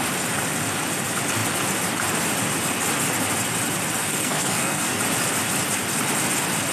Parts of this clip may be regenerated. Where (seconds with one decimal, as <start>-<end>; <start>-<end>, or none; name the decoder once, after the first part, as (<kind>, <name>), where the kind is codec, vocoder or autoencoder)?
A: 4.0-5.0 (codec, SNAC)